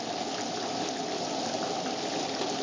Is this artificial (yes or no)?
no